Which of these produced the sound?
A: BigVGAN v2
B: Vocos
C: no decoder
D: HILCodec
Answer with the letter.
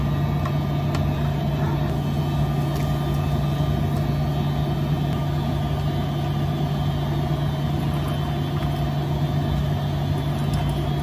C